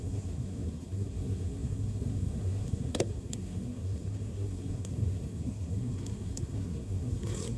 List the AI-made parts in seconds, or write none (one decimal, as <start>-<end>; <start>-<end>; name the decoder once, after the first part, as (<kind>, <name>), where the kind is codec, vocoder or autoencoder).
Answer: 0.0-7.6 (codec, SNAC)